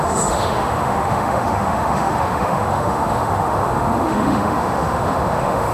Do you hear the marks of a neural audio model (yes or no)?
yes